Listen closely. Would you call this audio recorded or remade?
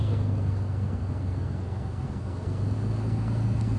remade